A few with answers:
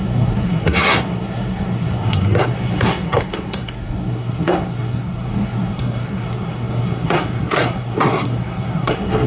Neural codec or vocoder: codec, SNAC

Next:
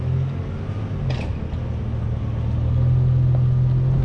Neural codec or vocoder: none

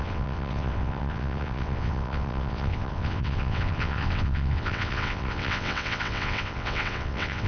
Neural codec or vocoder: vocoder, WaveNeXt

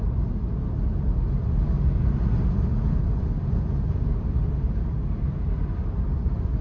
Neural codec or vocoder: none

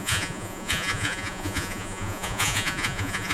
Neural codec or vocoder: vocoder, Vocos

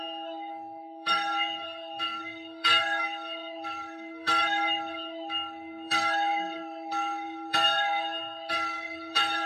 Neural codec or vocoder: codec, SNAC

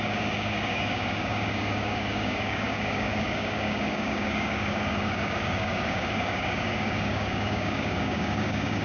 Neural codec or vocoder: codec, DAC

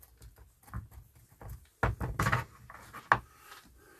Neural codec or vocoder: none